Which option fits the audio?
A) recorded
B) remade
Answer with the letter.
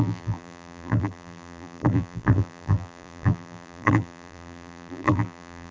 B